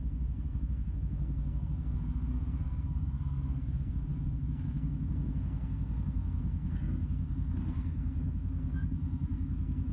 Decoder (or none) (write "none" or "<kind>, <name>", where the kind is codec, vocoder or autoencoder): codec, SNAC